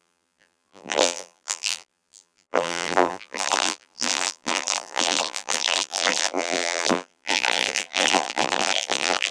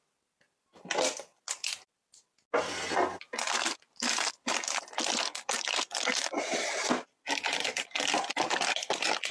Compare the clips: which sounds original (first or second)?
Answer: second